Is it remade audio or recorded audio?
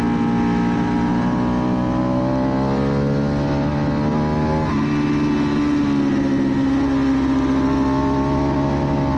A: recorded